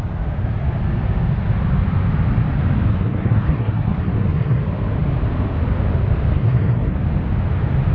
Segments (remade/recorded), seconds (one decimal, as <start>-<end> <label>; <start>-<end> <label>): 0.0-2.9 recorded; 2.9-4.6 remade; 4.6-6.3 recorded; 6.3-7.0 remade; 7.0-7.9 recorded